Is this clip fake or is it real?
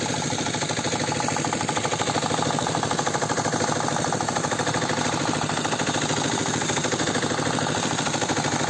real